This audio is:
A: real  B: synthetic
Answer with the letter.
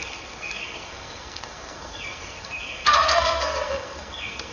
B